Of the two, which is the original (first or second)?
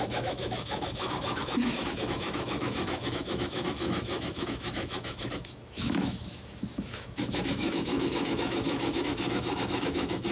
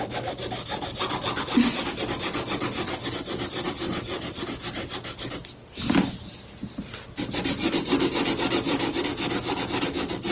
second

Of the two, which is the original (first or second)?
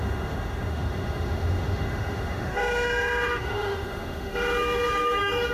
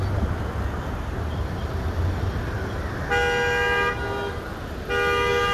second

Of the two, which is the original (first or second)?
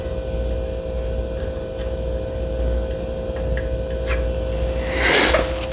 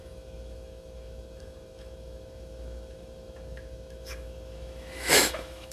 first